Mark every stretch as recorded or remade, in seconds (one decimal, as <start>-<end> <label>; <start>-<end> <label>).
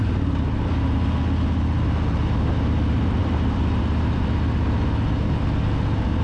0.0-3.2 recorded; 3.2-3.8 remade; 3.8-6.2 recorded